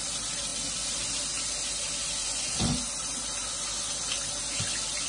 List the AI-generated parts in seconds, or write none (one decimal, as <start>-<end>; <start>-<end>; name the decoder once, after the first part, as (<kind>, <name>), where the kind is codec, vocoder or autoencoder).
2.2-2.8 (vocoder, Vocos)